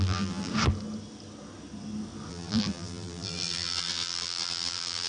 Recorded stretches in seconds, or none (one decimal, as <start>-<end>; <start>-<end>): 0.5-2.3